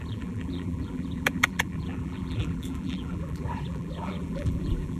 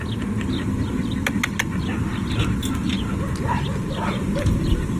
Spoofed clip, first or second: first